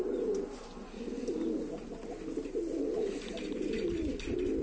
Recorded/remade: recorded